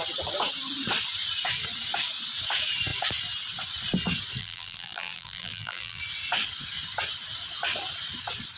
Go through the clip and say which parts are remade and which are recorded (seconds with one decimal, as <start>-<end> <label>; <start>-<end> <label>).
0.0-4.4 recorded; 4.4-6.0 remade; 6.0-8.6 recorded